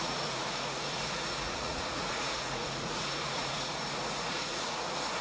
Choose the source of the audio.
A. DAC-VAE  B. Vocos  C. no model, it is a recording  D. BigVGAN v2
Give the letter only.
B